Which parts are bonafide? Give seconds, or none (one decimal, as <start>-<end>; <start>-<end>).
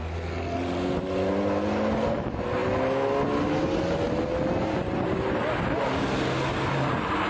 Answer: 0.0-7.3